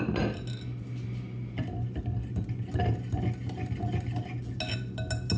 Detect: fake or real real